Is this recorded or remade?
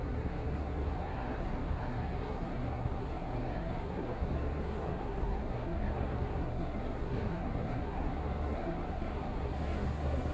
remade